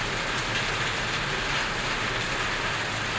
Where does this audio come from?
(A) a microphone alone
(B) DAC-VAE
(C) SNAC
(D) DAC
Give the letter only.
A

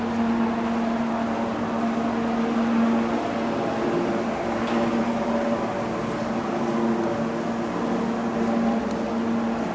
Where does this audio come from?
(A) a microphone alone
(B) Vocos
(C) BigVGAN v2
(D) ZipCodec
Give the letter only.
A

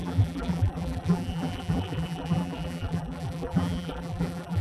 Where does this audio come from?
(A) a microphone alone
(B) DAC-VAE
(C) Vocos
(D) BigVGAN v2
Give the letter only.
D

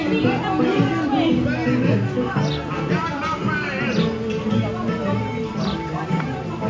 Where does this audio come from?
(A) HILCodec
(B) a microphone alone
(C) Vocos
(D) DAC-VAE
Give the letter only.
B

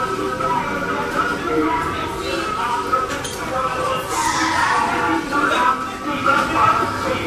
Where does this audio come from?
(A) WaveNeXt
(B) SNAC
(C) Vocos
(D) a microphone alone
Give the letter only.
D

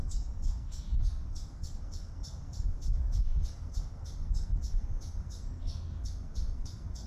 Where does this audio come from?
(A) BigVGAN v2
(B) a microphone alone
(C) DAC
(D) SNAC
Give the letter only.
D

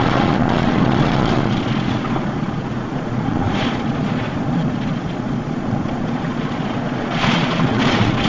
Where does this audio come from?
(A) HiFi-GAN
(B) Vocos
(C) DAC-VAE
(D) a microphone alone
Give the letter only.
B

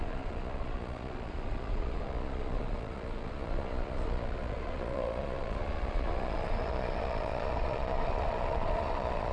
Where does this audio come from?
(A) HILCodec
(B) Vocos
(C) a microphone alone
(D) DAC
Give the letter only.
B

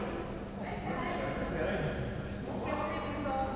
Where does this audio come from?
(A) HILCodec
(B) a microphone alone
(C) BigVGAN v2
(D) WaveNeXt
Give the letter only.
B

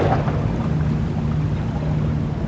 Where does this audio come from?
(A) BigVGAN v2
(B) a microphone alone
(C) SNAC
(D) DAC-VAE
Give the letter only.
B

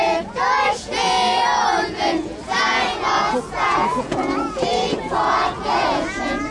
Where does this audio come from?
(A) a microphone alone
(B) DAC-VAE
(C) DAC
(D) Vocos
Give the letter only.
D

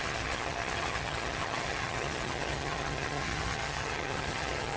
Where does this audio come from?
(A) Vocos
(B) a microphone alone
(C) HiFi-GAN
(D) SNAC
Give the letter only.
C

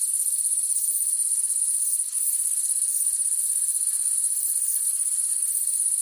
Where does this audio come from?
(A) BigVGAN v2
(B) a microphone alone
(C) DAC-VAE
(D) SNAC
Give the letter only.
A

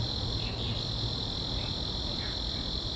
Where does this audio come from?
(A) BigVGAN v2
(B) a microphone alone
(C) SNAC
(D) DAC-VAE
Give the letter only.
A